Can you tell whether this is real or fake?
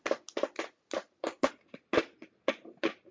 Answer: real